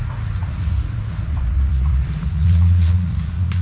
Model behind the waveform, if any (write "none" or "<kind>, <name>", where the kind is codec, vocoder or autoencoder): vocoder, Vocos